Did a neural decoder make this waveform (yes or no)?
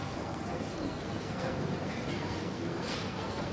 yes